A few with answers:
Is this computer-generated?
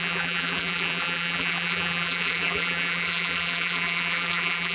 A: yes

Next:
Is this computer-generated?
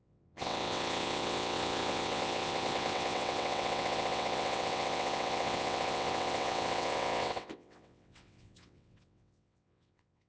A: yes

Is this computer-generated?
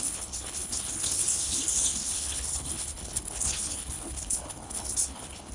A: yes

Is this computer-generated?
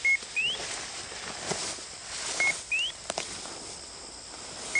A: no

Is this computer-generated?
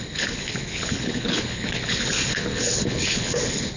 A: yes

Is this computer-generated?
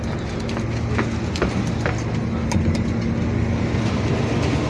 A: no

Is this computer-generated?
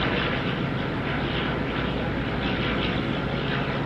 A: no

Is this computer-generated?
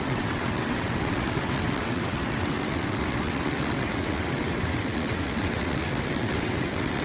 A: yes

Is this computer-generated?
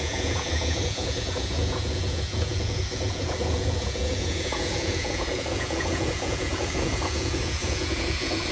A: yes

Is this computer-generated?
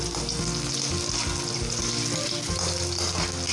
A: no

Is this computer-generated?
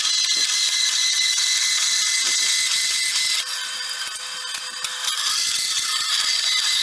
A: no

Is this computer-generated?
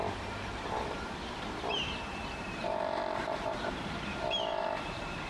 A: yes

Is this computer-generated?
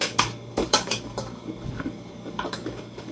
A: yes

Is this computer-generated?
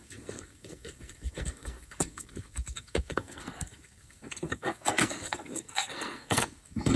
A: yes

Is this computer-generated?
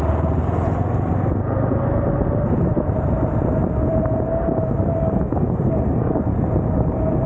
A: no